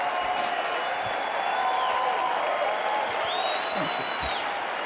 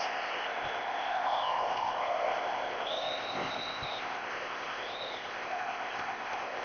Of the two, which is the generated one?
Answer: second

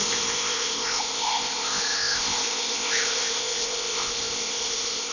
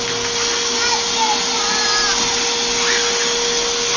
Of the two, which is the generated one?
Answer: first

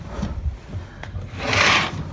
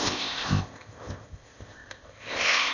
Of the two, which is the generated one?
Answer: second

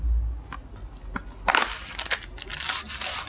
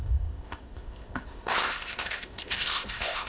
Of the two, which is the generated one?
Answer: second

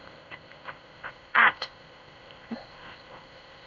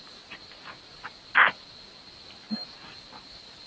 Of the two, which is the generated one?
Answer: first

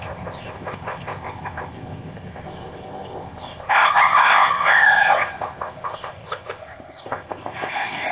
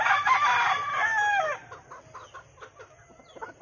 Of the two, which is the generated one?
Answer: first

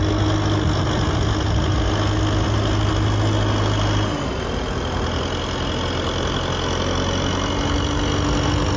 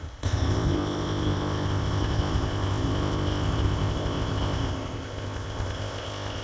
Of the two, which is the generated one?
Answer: second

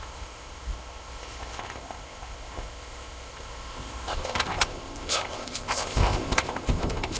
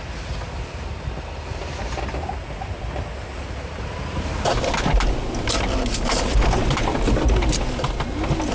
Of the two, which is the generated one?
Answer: first